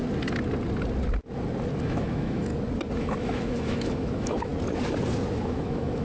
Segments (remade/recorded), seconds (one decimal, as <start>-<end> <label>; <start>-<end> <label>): 0.0-1.8 recorded; 1.8-2.5 remade; 2.5-3.0 recorded; 3.0-4.5 remade; 4.5-5.3 recorded; 5.3-6.0 remade